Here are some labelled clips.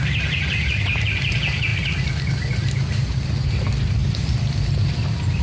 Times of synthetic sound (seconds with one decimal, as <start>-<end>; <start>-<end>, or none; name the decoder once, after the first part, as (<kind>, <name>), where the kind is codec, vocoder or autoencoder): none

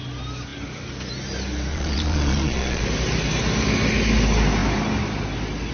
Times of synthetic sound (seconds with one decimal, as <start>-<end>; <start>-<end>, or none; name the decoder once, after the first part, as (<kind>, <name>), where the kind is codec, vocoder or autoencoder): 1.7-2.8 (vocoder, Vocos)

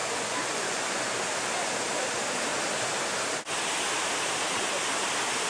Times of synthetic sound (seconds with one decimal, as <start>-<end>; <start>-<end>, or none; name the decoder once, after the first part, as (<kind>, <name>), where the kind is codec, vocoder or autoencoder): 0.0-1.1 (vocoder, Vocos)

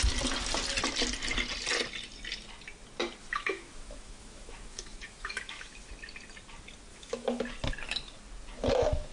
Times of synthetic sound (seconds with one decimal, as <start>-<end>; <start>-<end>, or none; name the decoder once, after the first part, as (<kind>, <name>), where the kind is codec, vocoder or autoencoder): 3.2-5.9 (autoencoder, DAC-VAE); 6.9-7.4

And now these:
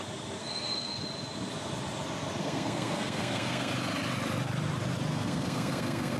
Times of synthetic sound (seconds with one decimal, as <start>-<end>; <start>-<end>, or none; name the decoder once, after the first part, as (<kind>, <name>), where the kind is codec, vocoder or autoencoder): 0.4-1.0 (codec, SNAC); 2.4-3.7; 5.1-6.2

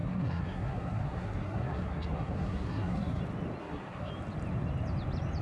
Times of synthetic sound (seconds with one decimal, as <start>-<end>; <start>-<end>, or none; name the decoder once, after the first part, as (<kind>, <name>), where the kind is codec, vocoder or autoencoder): 0.0-3.2 (codec, SNAC); 3.6-4.1

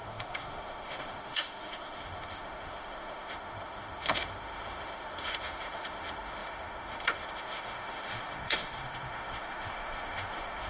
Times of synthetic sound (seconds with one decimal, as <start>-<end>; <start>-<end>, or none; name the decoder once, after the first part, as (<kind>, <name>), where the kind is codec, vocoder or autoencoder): 0.0-10.7 (autoencoder, DAC-VAE)

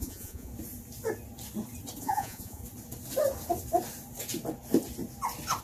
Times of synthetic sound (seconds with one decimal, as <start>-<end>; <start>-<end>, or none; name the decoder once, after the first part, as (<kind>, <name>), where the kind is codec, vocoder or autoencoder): 0.0-0.5 (vocoder, Vocos); 2.0-2.6